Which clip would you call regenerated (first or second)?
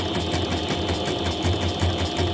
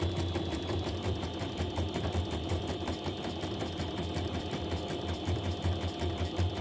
second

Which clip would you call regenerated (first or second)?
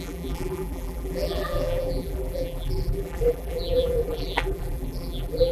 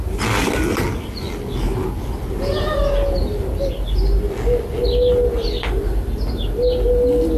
first